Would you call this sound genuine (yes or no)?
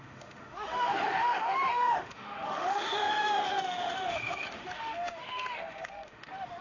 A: no